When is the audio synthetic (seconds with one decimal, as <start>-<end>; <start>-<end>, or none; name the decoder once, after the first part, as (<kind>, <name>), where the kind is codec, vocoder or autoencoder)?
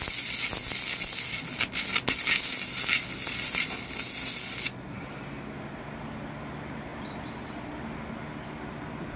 none